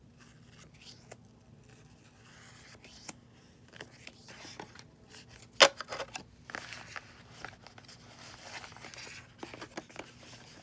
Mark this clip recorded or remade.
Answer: recorded